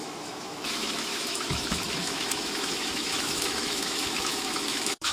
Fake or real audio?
fake